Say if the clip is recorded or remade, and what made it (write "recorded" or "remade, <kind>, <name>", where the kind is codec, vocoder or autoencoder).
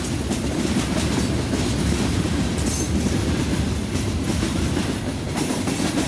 recorded